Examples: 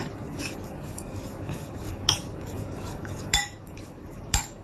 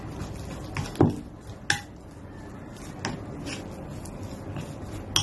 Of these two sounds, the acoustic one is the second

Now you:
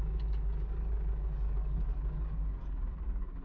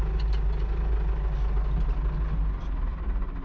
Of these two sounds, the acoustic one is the second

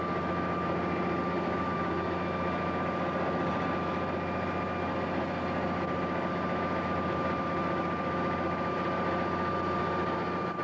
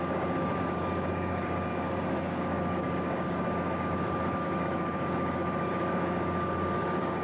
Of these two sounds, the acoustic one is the first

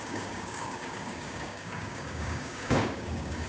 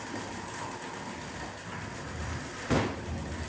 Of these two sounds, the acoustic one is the second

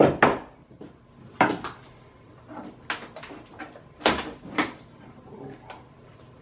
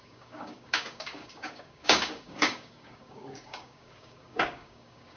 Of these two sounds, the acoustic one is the first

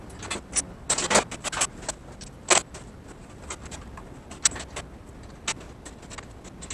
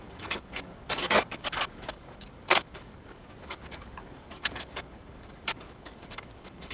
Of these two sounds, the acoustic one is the first